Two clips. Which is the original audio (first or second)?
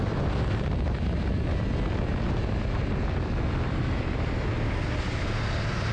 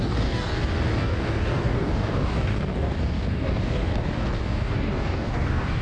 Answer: first